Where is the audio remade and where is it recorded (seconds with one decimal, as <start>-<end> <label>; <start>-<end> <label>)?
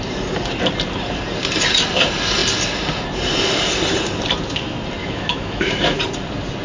0.0-5.0 recorded; 5.0-6.0 remade; 6.0-6.6 recorded